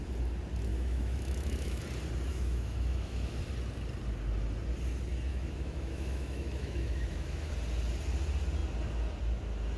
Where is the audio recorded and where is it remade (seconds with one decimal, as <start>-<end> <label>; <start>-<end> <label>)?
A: 0.0-0.7 recorded; 0.7-1.8 remade; 1.8-2.3 recorded; 2.3-3.4 remade; 3.4-5.3 recorded; 5.3-7.5 remade; 7.5-9.8 recorded